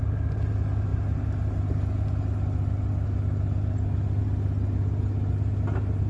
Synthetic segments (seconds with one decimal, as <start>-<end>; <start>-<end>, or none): none